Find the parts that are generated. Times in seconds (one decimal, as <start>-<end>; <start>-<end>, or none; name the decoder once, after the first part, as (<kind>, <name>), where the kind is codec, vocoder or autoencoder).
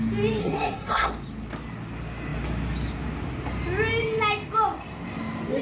0.4-1.1 (codec, SNAC)